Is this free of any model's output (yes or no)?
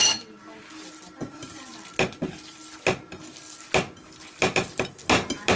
yes